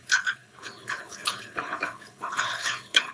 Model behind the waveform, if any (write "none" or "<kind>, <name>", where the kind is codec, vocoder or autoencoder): codec, HILCodec